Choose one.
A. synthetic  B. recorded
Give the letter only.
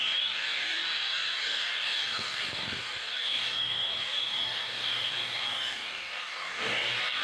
A